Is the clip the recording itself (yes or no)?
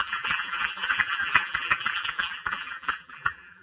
no